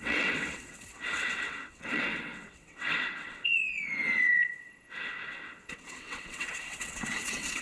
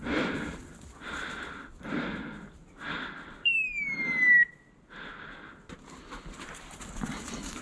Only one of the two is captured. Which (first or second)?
second